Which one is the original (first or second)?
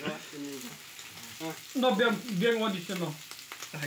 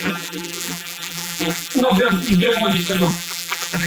first